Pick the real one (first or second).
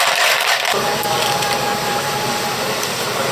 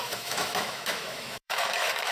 first